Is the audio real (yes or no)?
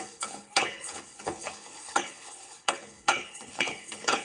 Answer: no